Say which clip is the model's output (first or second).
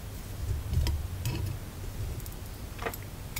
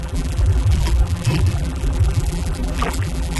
second